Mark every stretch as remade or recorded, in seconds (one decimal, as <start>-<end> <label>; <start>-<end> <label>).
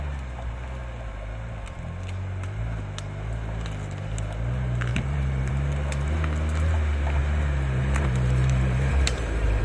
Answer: 0.0-4.9 recorded; 4.9-5.5 remade; 5.5-7.8 recorded; 7.8-9.6 remade